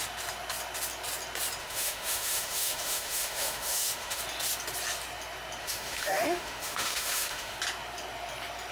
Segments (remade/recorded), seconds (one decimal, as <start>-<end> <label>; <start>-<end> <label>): 0.0-1.6 recorded; 1.6-4.2 remade; 4.2-5.6 recorded; 5.6-7.6 remade; 7.6-8.7 recorded